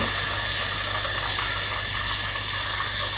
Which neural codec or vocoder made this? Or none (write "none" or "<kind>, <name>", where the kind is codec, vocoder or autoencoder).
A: none